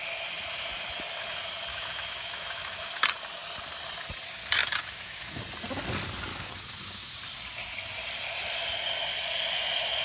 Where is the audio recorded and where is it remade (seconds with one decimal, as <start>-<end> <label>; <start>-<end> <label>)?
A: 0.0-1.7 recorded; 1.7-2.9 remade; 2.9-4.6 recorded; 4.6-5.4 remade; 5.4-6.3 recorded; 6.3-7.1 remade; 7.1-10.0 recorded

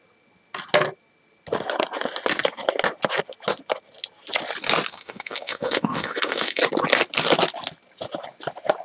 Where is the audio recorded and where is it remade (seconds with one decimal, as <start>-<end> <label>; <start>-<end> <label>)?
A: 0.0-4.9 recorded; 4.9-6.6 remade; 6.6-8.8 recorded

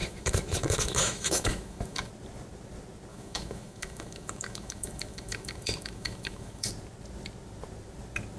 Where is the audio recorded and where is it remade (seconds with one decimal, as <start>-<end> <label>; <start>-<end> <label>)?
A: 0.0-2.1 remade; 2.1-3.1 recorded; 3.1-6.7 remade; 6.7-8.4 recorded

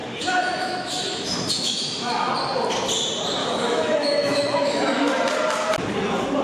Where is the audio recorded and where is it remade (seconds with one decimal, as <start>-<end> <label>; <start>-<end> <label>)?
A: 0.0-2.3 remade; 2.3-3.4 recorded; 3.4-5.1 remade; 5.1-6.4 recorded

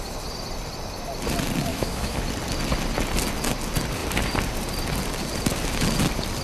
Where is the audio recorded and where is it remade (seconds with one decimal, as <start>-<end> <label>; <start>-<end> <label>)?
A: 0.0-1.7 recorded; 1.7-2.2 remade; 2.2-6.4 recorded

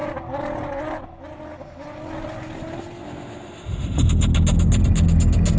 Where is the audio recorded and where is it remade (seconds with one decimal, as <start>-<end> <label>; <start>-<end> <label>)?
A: 0.0-5.6 recorded

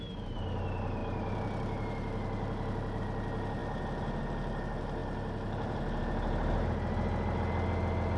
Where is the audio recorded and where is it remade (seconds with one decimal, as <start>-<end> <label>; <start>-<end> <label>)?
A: 0.0-8.2 recorded

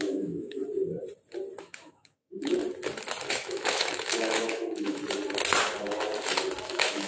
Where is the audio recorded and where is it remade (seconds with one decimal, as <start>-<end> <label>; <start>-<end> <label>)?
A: 0.0-0.6 remade; 0.6-1.6 recorded; 1.6-2.6 remade; 2.6-3.3 recorded; 3.3-5.0 remade; 5.0-6.6 recorded; 6.6-7.1 remade